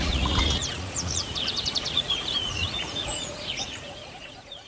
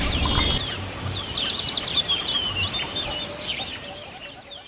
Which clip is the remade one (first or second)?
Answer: first